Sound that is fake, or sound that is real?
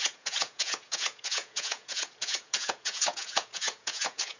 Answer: fake